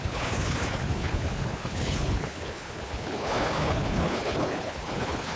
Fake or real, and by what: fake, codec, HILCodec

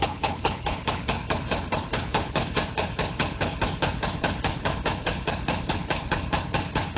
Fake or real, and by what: fake, codec, HILCodec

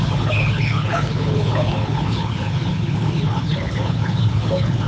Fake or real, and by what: fake, codec, HILCodec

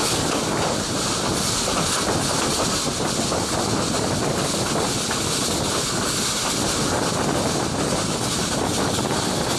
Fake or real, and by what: real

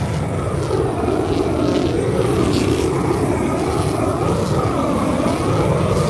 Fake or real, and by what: real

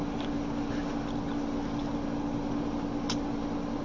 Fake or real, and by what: real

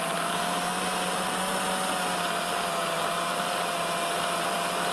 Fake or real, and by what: real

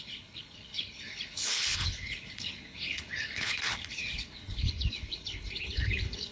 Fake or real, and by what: fake, codec, HILCodec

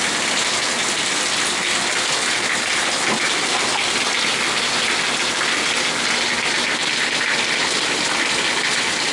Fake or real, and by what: real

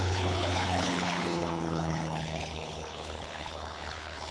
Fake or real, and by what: fake, codec, HILCodec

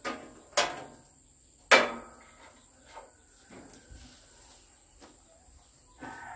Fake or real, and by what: real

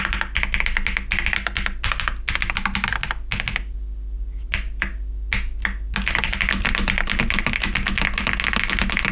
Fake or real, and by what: real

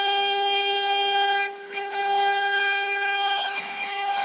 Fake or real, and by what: fake, codec, HILCodec